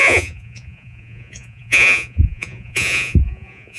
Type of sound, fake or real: fake